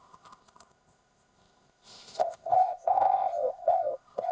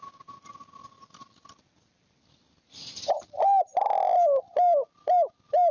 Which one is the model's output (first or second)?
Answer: first